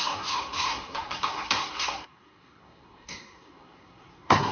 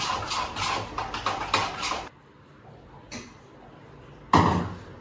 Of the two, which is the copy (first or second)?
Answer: first